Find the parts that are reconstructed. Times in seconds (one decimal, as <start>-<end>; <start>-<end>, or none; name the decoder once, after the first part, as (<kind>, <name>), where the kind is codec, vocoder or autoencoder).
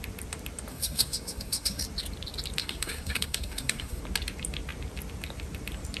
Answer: 0.7-1.8 (codec, SNAC); 2.6-4.0